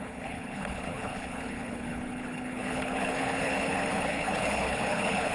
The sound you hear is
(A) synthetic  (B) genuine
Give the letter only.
A